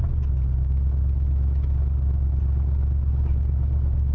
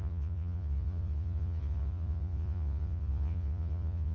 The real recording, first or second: first